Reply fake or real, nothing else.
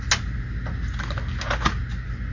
real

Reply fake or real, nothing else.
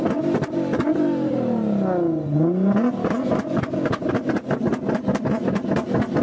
real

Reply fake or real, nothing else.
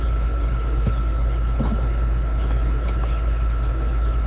fake